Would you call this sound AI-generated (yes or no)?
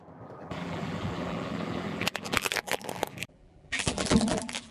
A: yes